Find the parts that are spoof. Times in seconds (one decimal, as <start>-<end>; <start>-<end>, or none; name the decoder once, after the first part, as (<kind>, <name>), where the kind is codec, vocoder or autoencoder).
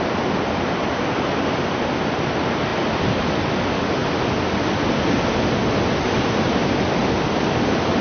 none